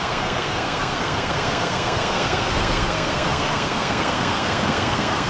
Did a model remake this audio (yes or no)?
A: yes